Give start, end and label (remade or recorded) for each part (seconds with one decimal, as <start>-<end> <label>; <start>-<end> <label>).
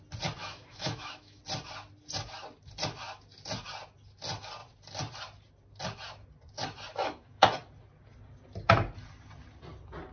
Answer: 0.0-0.4 recorded; 0.4-1.4 remade; 1.4-6.9 recorded; 6.9-7.5 remade; 7.5-10.1 recorded